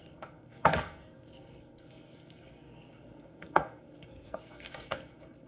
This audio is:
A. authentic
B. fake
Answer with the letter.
B